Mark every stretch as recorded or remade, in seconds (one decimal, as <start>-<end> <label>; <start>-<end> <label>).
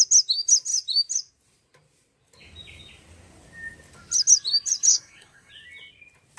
0.0-4.9 recorded; 4.9-5.5 remade; 5.5-6.4 recorded